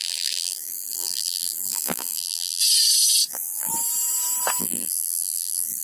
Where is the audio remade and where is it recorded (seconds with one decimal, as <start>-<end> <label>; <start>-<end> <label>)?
0.0-2.6 remade; 2.6-3.3 recorded; 3.3-3.7 remade; 3.7-4.6 recorded; 4.6-5.8 remade